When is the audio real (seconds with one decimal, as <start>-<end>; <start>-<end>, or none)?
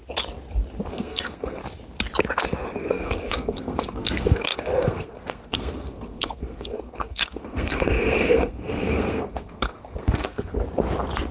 0.0-0.9; 1.6-2.9; 10.6-11.3